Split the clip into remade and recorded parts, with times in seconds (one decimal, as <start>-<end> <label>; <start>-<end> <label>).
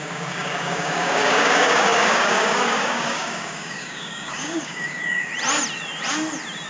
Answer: 0.0-5.3 remade; 5.3-6.7 recorded